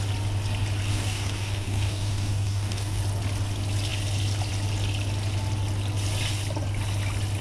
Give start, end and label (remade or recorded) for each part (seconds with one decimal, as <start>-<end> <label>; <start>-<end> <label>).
0.0-0.9 recorded; 0.9-3.0 remade; 3.0-7.4 recorded

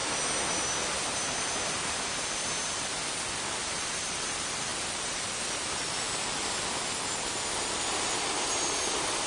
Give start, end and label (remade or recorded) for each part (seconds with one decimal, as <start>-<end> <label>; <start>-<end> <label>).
0.0-3.7 recorded; 3.7-4.7 remade; 4.7-8.2 recorded; 8.2-9.3 remade

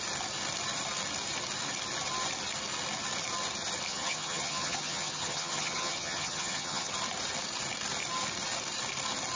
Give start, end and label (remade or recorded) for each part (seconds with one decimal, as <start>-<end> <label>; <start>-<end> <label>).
0.0-3.9 recorded; 3.9-6.9 remade; 6.9-9.4 recorded

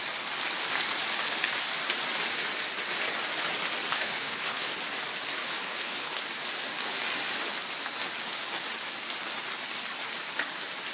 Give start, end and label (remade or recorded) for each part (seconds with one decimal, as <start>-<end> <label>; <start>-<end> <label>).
0.0-3.9 recorded; 3.9-4.7 remade; 4.7-5.4 recorded; 5.4-6.2 remade; 6.2-10.9 recorded

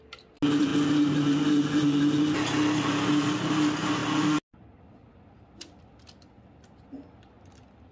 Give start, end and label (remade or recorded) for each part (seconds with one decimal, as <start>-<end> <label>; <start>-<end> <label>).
0.0-7.9 recorded

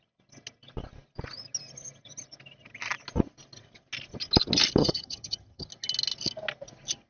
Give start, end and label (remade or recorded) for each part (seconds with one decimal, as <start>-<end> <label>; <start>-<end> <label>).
0.0-4.8 recorded; 4.8-5.7 remade; 5.7-7.1 recorded

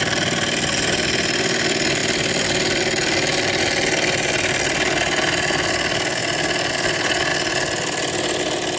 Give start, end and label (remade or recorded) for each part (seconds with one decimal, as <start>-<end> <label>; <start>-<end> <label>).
0.0-8.8 recorded

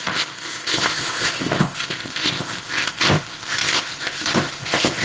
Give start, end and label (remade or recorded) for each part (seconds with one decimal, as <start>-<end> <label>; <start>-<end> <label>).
0.0-5.0 remade